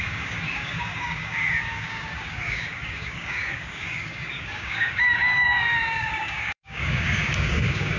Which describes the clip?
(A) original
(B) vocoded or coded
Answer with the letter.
B